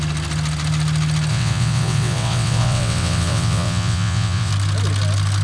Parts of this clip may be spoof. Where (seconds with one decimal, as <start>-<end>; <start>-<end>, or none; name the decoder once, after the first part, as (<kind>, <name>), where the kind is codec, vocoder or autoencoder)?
1.3-4.5 (vocoder, WaveNeXt)